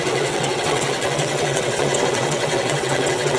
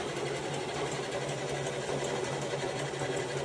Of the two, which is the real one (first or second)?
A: second